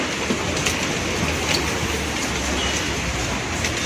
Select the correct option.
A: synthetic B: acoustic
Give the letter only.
B